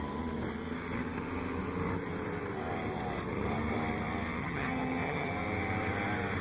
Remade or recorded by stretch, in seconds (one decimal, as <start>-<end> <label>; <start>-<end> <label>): 0.0-4.4 recorded; 4.4-5.3 remade; 5.3-6.4 recorded